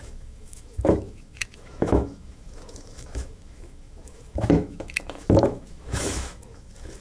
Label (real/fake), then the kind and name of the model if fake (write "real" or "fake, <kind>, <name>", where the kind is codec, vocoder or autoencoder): fake, autoencoder, DAC-VAE